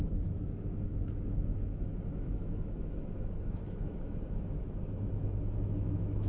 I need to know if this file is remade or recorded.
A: remade